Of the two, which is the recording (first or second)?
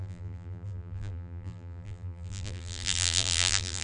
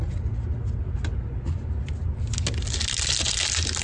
second